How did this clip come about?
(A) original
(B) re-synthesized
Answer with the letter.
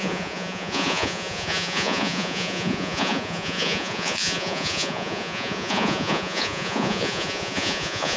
B